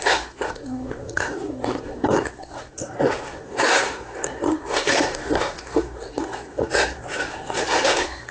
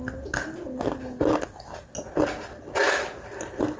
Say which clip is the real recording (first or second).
second